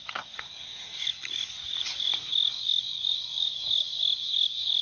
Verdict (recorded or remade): remade